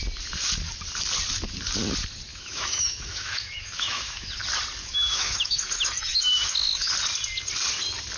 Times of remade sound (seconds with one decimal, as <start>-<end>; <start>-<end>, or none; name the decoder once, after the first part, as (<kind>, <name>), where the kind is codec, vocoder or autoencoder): 2.3-4.3 (autoencoder, DAC-VAE); 4.8-6.9